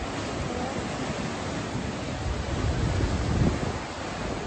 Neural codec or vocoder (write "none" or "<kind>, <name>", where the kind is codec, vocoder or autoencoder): none